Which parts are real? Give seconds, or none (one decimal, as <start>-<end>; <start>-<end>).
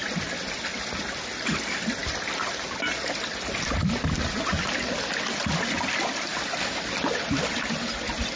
0.0-2.0; 3.8-6.3; 7.7-8.3